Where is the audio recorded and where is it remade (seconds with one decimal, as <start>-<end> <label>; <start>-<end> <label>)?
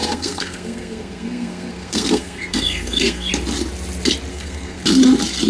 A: 0.0-3.3 remade; 3.3-4.3 recorded; 4.3-4.8 remade; 4.8-5.5 recorded